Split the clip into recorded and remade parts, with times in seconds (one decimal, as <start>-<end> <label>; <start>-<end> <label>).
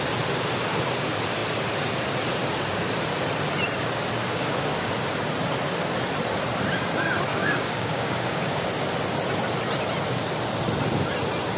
0.0-4.2 recorded; 4.2-4.9 remade; 4.9-7.3 recorded; 7.3-8.7 remade; 8.7-11.6 recorded